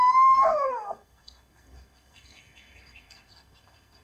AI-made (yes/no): yes